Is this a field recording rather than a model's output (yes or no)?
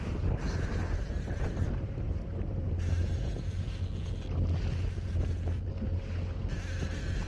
yes